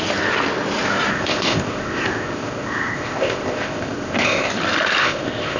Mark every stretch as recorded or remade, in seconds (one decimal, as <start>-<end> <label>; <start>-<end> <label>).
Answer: 0.0-1.1 recorded; 1.1-4.5 remade; 4.5-5.0 recorded; 5.0-5.6 remade

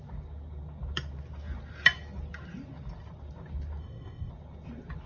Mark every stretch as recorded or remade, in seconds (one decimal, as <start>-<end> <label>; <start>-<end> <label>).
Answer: 0.0-3.8 recorded; 3.8-4.3 remade; 4.3-5.1 recorded